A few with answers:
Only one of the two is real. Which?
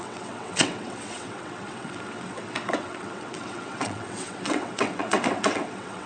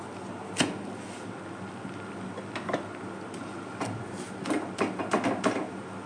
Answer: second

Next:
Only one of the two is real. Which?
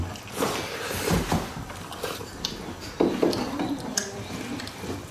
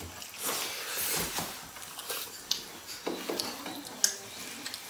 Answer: second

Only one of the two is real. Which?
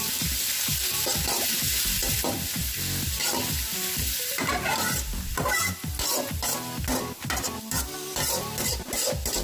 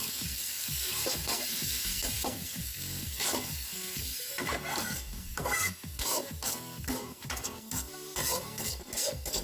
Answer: first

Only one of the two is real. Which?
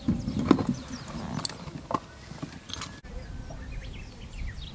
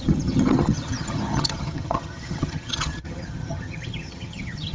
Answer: first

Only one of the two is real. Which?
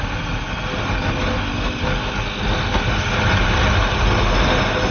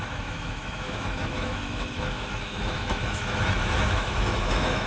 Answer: first